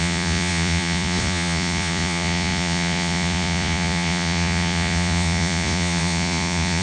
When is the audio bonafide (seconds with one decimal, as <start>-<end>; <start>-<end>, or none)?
none